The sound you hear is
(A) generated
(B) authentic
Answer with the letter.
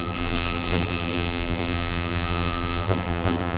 A